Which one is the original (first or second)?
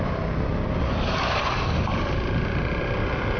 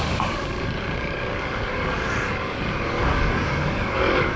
first